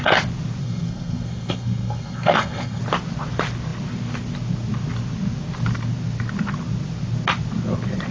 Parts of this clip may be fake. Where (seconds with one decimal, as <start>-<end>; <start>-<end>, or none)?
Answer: 0.6-2.8